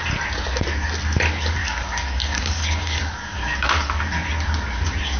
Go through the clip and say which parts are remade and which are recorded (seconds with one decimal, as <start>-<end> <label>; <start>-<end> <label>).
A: 0.0-1.6 recorded; 1.6-4.0 remade; 4.0-5.2 recorded